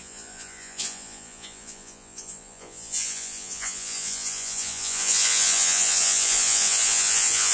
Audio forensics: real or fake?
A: fake